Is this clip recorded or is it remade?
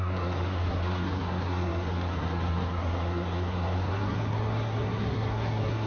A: remade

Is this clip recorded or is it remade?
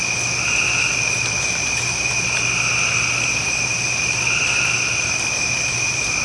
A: recorded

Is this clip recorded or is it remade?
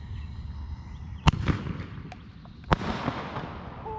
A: recorded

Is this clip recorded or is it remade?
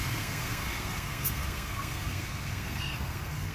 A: remade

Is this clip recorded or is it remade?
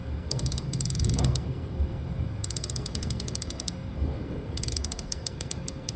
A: remade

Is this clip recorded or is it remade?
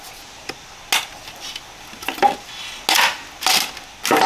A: recorded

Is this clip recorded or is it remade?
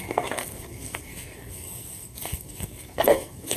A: remade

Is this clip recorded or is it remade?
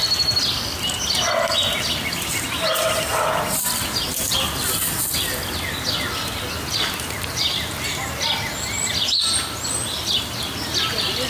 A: recorded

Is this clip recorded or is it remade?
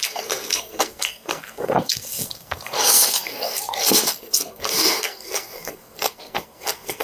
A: remade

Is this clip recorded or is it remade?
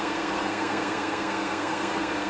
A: remade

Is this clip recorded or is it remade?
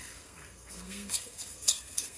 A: remade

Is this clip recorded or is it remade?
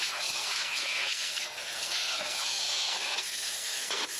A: remade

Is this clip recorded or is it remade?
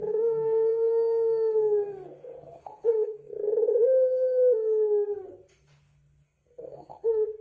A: remade